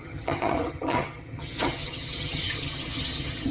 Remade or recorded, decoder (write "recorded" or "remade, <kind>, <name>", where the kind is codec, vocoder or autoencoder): remade, vocoder, HiFi-GAN